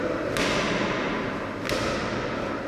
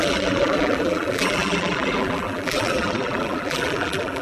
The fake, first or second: second